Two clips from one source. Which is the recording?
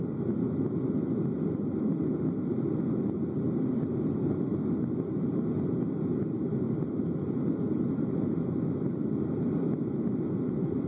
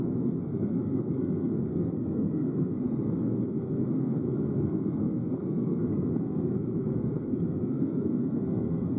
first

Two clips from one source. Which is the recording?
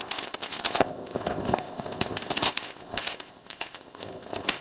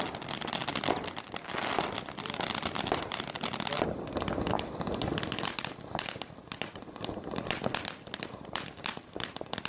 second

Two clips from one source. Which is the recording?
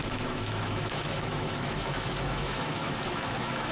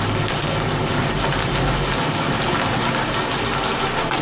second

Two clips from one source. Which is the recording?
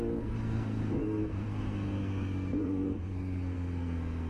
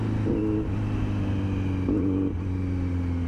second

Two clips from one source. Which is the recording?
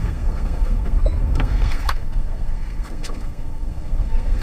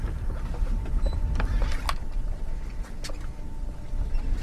second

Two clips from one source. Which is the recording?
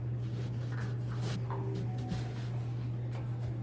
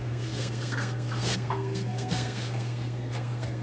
first